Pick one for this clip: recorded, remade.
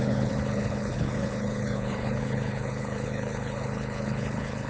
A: remade